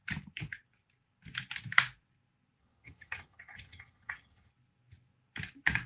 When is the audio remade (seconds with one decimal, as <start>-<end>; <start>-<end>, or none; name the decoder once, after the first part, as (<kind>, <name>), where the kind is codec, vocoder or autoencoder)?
2.6-4.5 (vocoder, HiFi-GAN)